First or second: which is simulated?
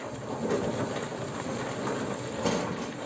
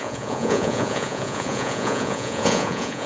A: second